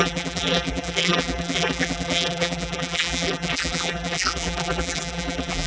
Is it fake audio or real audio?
fake